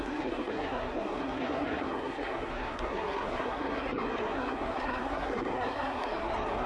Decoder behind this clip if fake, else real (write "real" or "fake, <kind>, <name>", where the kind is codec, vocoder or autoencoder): fake, codec, SNAC